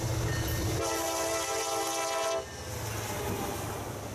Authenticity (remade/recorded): recorded